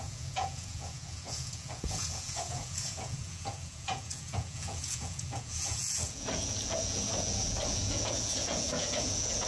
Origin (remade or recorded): remade